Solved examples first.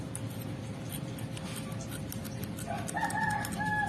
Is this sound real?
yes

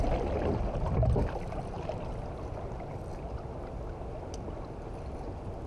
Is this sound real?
yes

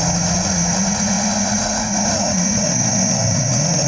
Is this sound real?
no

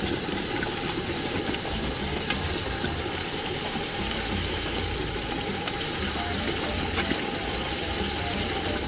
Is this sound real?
yes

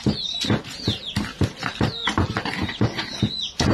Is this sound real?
yes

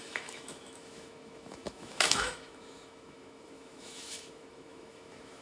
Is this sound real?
no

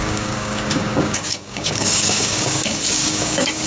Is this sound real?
no